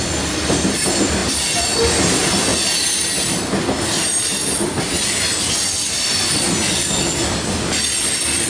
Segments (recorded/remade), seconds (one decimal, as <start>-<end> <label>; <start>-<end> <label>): 0.0-8.5 recorded